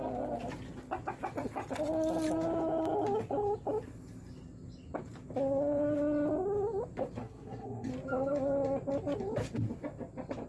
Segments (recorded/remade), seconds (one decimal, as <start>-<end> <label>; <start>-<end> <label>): 0.0-7.2 recorded; 7.2-7.9 remade; 7.9-10.5 recorded